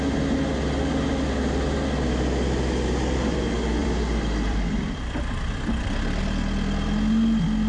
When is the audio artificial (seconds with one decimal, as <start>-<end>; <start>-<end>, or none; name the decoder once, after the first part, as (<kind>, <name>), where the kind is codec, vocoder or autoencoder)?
3.8-6.2 (vocoder, BigVGAN v2)